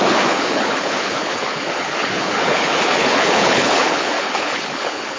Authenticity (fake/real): fake